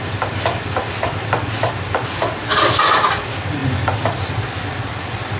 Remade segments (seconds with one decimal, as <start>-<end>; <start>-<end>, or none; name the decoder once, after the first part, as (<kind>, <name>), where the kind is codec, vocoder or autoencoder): none

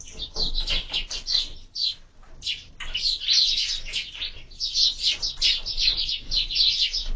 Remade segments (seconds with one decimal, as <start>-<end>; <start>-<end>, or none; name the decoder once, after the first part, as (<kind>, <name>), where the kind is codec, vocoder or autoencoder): none

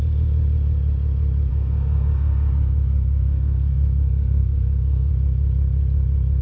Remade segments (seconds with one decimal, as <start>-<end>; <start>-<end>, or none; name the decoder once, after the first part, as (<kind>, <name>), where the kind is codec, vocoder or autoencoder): 1.5-5.1 (codec, SNAC)

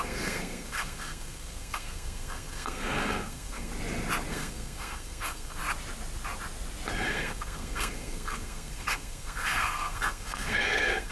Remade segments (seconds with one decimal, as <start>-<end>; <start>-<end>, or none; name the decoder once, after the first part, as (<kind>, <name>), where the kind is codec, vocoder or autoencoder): 0.0-3.7 (codec, SNAC); 4.3-5.6; 7.1-11.1

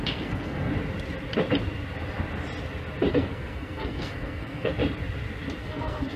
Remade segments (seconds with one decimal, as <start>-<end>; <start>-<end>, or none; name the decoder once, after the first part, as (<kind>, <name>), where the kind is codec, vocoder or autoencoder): 0.0-0.7 (codec, SNAC); 3.1-4.8; 5.6-6.2

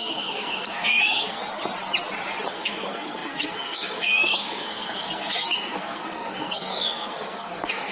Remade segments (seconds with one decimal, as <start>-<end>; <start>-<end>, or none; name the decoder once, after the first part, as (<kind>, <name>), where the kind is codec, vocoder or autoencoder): 0.0-1.4 (codec, SNAC); 2.5-7.9

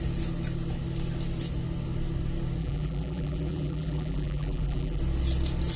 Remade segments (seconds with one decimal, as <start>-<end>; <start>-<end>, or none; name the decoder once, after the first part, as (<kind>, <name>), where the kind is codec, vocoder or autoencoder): 2.6-5.0 (vocoder, BigVGAN v2)

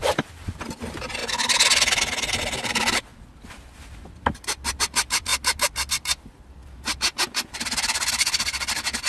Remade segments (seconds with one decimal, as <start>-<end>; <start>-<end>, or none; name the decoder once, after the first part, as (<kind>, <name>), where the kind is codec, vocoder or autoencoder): 0.0-1.2 (vocoder, BigVGAN v2); 2.4-3.1; 4.8-5.3; 5.9-6.6; 8.1-9.1